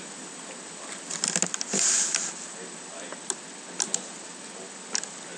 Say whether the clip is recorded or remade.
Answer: recorded